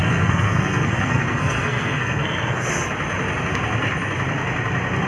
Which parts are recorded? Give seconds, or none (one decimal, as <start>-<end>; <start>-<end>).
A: 2.7-5.1